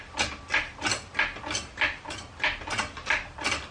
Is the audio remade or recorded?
recorded